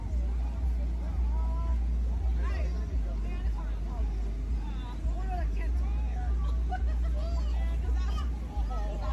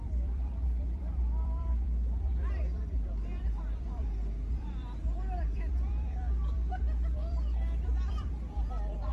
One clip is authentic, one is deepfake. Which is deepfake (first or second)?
second